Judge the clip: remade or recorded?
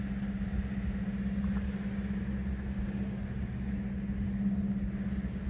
recorded